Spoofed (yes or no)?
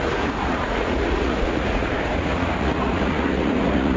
yes